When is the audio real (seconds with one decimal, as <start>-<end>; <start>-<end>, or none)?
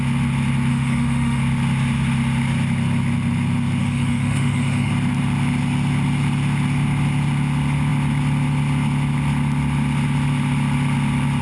0.0-0.7; 1.4-3.8; 4.9-11.4